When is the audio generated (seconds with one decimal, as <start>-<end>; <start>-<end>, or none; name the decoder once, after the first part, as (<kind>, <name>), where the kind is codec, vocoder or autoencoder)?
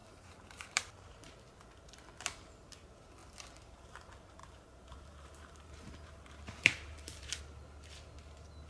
0.0-0.8 (vocoder, BigVGAN v2); 4.4-7.4